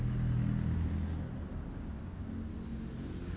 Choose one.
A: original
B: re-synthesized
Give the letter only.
A